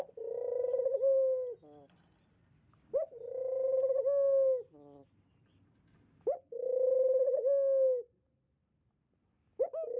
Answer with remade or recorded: recorded